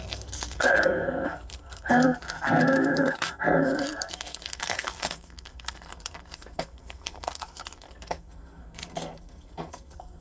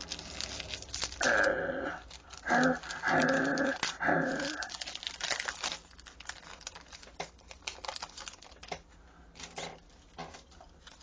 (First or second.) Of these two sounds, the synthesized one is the first